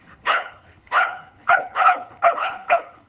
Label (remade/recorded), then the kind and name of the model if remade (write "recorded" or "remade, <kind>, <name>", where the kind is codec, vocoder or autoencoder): remade, codec, HILCodec